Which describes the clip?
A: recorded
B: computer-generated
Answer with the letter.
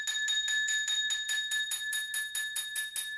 A